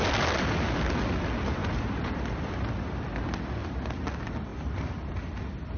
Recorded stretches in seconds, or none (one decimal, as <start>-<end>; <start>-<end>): 0.0-1.6; 2.1-4.5; 5.1-5.8